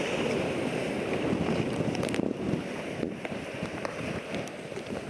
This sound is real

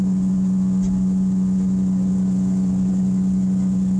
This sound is real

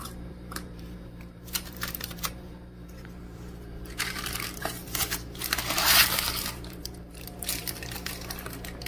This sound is fake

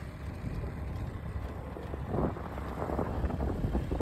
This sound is fake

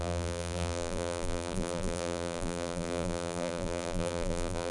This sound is fake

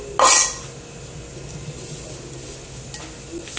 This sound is real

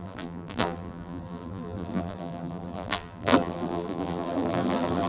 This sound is fake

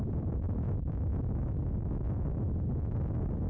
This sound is fake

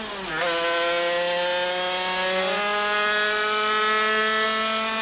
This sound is real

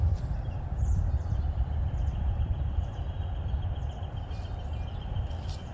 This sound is fake